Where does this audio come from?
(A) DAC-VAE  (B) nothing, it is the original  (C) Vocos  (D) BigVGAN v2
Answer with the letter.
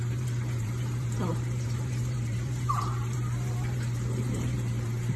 D